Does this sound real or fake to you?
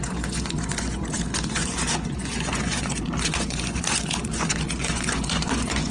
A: fake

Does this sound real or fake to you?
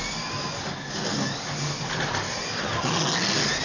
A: real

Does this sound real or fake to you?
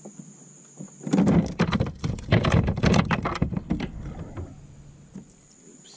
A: real